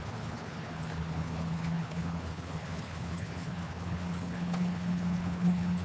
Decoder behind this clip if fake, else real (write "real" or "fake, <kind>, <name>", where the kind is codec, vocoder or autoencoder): fake, codec, HILCodec